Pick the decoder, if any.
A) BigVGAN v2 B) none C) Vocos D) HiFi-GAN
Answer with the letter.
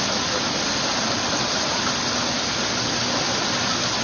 B